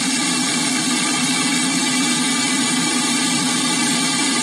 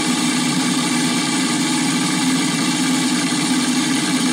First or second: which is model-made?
first